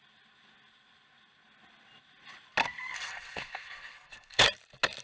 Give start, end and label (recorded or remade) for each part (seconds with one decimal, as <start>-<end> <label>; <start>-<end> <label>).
0.0-2.6 recorded; 2.6-4.4 remade; 4.4-5.0 recorded

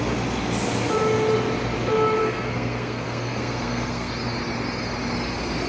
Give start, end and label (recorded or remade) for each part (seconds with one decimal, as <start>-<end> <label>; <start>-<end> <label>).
0.0-2.2 recorded; 2.2-4.1 remade; 4.1-5.7 recorded